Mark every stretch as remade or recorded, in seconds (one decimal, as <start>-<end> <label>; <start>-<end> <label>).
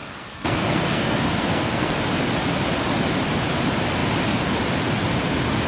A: 0.0-2.0 remade; 2.0-5.7 recorded